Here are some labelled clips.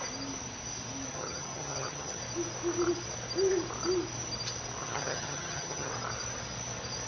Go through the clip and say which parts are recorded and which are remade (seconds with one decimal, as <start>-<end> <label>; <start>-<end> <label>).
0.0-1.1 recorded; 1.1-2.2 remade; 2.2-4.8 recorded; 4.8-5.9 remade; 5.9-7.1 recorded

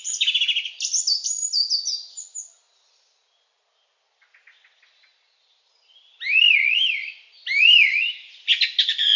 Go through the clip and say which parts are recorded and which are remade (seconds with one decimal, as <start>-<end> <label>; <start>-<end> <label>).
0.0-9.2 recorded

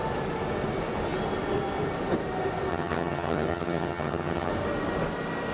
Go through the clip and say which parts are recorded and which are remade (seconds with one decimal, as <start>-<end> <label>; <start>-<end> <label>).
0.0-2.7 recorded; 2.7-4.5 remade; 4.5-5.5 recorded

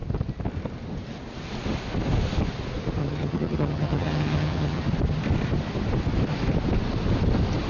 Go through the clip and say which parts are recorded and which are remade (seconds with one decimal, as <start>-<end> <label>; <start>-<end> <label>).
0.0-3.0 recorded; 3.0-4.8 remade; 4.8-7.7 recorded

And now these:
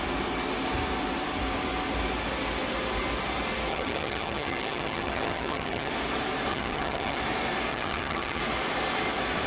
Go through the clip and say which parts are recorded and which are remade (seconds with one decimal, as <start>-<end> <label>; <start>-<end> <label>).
0.0-3.7 recorded; 3.7-5.9 remade; 5.9-6.5 recorded; 6.5-7.2 remade; 7.2-7.7 recorded; 7.7-8.4 remade; 8.4-9.5 recorded